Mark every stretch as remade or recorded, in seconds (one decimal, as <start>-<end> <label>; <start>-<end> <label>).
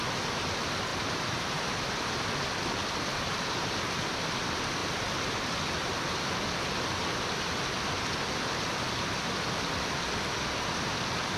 0.0-0.9 recorded; 0.9-2.2 remade; 2.2-3.1 recorded; 3.1-3.7 remade; 3.7-11.4 recorded